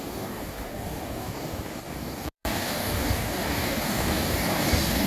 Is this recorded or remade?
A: remade